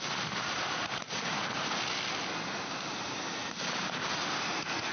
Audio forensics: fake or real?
real